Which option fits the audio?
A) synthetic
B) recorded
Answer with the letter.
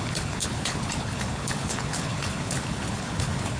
A